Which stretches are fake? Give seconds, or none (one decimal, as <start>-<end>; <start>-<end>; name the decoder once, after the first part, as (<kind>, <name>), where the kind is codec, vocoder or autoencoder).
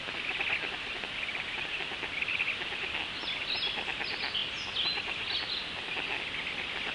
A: none